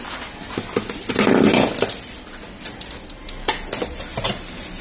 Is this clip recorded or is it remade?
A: recorded